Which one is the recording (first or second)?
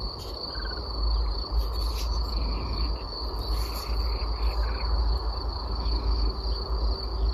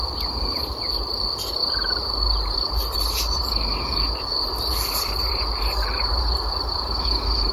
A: first